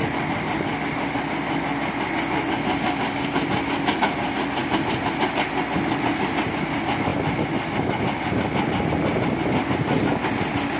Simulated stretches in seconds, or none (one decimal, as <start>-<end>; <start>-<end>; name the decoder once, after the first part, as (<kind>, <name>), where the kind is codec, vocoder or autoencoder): none